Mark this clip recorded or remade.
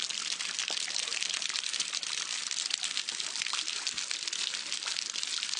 recorded